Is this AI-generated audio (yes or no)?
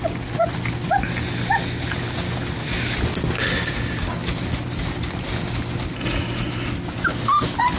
no